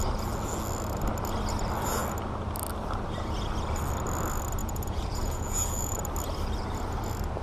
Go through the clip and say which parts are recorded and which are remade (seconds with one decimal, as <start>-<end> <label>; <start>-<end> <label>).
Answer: 0.0-4.6 recorded; 4.6-6.0 remade; 6.0-7.4 recorded